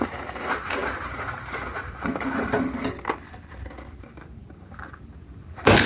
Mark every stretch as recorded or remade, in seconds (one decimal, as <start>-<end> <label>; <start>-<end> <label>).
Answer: 0.0-0.8 recorded; 0.8-2.2 remade; 2.2-5.9 recorded

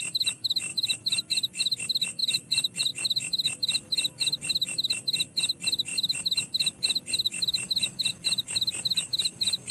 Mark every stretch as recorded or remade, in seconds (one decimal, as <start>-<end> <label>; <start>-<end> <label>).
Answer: 0.0-2.2 recorded; 2.2-2.9 remade; 2.9-9.7 recorded

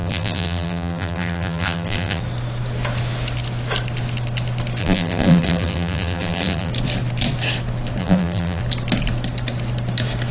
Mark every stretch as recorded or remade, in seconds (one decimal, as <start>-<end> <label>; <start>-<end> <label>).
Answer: 0.0-2.2 remade; 2.2-4.8 recorded; 4.8-6.7 remade; 6.7-8.0 recorded; 8.0-8.6 remade; 8.6-10.3 recorded

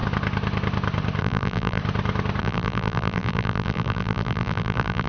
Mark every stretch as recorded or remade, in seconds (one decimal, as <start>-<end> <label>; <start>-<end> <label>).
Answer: 0.0-1.2 recorded; 1.2-1.8 remade; 1.8-2.4 recorded; 2.4-5.1 remade

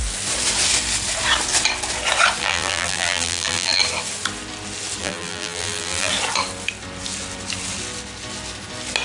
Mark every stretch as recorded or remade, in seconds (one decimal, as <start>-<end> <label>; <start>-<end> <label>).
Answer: 0.0-2.4 recorded; 2.4-3.8 remade; 3.8-5.0 recorded; 5.0-6.1 remade; 6.1-9.0 recorded